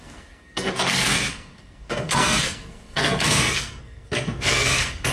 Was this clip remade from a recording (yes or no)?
yes